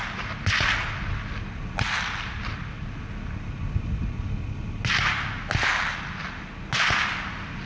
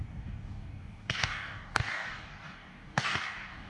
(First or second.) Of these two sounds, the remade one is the second